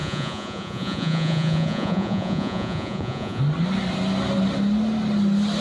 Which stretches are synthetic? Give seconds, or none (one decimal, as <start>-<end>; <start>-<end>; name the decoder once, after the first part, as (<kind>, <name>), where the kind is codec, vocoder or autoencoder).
0.0-3.4 (vocoder, Vocos)